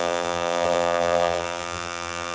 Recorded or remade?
remade